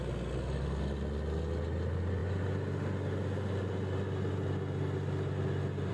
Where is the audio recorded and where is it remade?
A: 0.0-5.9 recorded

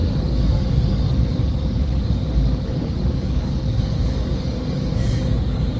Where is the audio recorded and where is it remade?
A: 0.0-5.8 remade

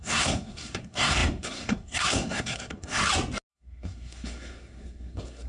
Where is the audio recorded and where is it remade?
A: 0.0-3.0 remade; 3.0-3.5 recorded; 3.5-5.5 remade

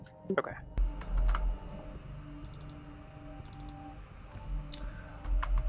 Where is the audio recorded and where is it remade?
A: 0.0-5.7 recorded

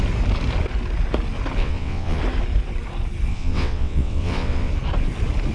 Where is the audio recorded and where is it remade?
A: 0.0-1.6 recorded; 1.6-2.2 remade; 2.2-3.3 recorded; 3.3-4.7 remade; 4.7-5.5 recorded

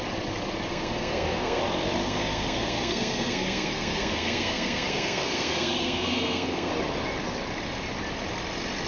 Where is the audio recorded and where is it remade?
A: 0.0-0.7 recorded; 0.7-1.6 remade; 1.6-2.0 recorded; 2.0-6.7 remade; 6.7-8.9 recorded

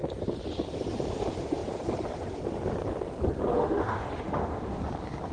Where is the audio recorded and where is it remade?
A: 0.0-3.5 recorded; 3.5-4.8 remade; 4.8-5.3 recorded

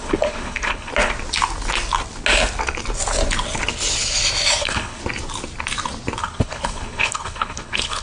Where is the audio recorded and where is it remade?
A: 0.0-0.9 remade; 0.9-4.6 recorded; 4.6-5.0 remade; 5.0-6.2 recorded; 6.2-8.0 remade